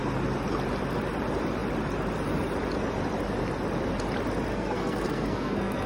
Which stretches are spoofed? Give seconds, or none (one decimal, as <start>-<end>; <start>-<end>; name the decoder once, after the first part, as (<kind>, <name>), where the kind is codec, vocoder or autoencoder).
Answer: 4.5-5.9 (codec, SNAC)